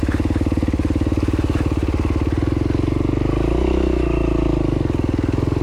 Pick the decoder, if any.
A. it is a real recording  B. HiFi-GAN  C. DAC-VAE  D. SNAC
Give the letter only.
A